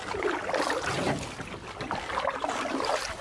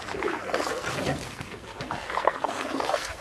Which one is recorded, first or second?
first